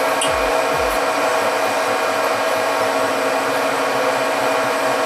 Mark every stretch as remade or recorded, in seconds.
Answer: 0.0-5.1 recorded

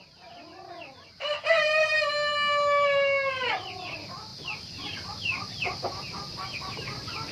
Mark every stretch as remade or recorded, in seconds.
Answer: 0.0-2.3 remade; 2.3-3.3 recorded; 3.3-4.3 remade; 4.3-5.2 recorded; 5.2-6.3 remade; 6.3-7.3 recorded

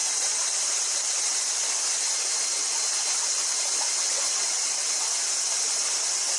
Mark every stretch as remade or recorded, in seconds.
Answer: 0.0-1.6 remade; 1.6-2.2 recorded; 2.2-4.9 remade; 4.9-6.4 recorded